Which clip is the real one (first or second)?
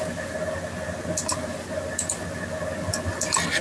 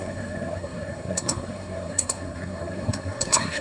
first